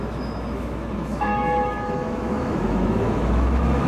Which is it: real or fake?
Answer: fake